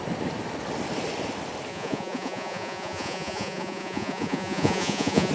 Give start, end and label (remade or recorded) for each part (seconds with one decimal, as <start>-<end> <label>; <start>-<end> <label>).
0.0-1.7 recorded; 1.7-5.3 remade